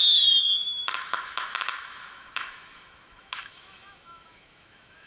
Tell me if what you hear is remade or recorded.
remade